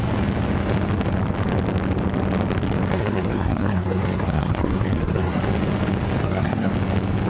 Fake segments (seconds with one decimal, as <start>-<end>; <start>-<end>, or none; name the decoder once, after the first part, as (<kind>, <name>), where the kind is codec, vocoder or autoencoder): 2.9-5.4 (codec, SNAC); 6.2-6.7